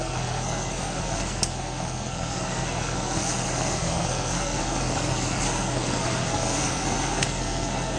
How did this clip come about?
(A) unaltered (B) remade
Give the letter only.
B